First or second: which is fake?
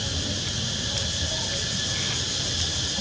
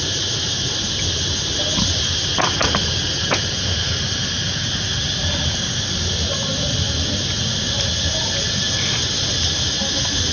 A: first